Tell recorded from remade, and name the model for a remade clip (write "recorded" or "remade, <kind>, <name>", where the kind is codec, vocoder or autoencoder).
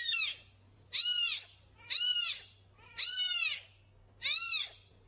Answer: recorded